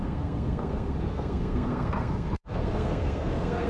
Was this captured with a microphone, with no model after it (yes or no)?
no